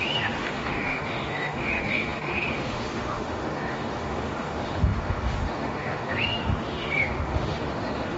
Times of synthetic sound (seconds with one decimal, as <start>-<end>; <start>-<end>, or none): 0.0-8.2